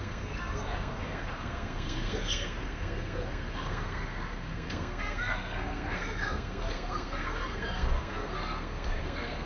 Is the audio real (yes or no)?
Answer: no